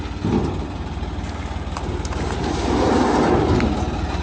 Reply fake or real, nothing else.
real